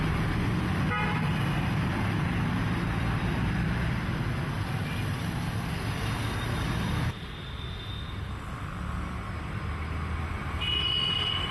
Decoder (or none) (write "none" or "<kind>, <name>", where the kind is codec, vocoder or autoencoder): none